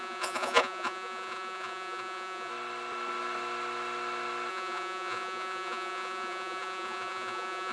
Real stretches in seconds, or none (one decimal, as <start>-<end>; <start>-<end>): 2.5-4.5